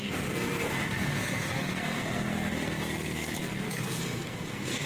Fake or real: fake